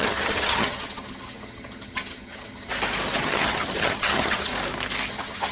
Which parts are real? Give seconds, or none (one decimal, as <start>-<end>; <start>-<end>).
2.7-3.2; 4.5-5.1